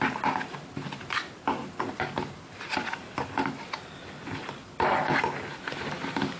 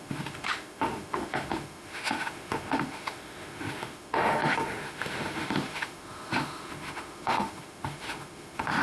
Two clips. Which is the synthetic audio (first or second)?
second